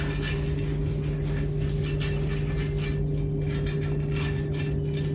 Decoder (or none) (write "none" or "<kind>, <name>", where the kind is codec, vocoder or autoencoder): none